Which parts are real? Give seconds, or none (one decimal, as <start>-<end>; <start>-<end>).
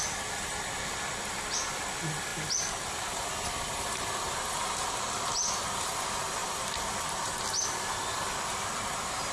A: 0.0-9.3